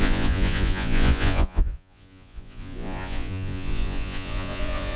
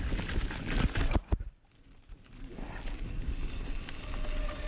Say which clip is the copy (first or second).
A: first